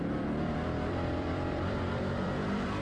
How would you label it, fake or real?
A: fake